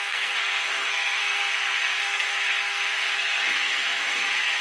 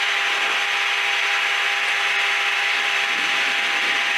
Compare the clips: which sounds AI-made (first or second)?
first